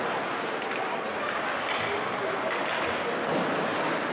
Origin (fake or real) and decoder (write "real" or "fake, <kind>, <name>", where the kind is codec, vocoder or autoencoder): real